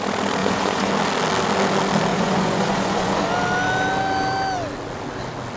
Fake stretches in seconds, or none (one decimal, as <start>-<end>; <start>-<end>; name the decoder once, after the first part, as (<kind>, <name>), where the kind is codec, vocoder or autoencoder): 0.4-0.9 (vocoder, Vocos); 2.1-3.3